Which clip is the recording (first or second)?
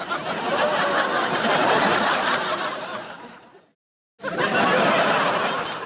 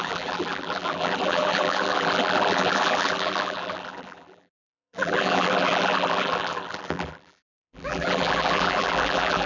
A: first